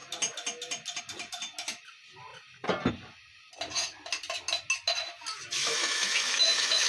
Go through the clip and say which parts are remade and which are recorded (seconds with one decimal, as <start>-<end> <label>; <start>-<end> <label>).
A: 0.0-5.6 recorded; 5.6-6.9 remade